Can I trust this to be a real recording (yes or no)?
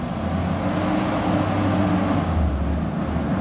yes